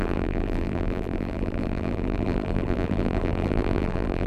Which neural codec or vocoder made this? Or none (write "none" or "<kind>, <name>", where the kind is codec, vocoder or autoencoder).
vocoder, BigVGAN v2